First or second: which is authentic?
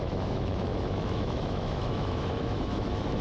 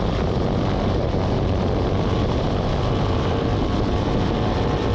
second